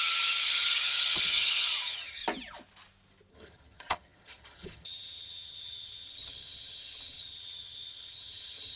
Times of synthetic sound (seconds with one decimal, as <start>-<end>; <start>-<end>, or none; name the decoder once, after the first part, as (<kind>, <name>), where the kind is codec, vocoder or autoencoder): 0.0-2.2 (vocoder, HiFi-GAN); 3.3-8.8